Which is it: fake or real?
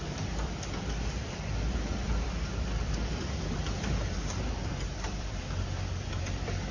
fake